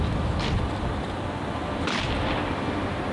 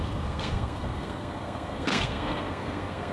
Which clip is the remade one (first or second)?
second